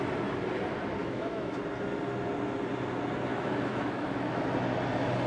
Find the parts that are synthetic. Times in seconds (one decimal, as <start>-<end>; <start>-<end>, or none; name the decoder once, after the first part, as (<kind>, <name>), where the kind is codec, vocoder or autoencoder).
1.0-1.6 (autoencoder, DAC-VAE); 3.3-4.5